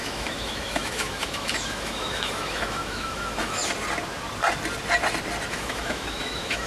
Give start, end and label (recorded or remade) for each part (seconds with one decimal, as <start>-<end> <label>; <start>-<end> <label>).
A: 0.0-3.6 remade; 3.6-5.5 recorded; 5.5-6.7 remade